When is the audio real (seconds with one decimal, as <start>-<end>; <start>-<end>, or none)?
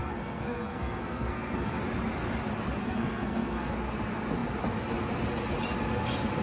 1.8-2.8; 3.7-6.4